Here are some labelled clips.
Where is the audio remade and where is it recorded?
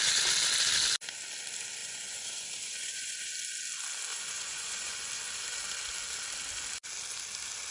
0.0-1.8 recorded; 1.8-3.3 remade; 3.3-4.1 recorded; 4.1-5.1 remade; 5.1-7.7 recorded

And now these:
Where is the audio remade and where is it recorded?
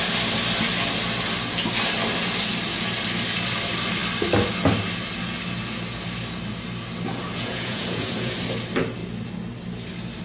0.0-7.3 recorded; 7.3-8.3 remade; 8.3-10.2 recorded